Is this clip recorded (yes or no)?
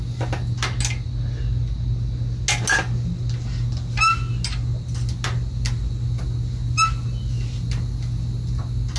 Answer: yes